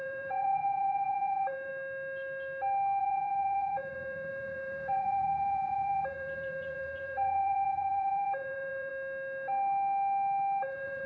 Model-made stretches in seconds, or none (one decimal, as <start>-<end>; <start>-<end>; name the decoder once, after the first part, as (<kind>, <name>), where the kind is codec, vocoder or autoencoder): 0.0-1.7 (vocoder, Vocos); 3.0-8.9; 10.6-11.1